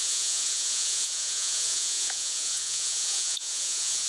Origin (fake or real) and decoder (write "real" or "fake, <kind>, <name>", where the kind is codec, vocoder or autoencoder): fake, vocoder, Vocos